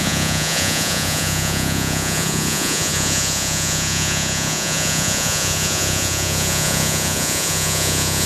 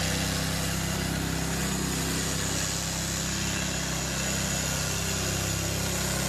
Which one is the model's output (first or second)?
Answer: first